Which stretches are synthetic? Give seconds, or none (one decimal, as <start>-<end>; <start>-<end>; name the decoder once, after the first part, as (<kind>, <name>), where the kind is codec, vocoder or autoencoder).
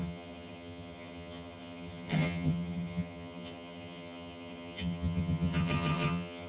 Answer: 0.0-6.5 (vocoder, HiFi-GAN)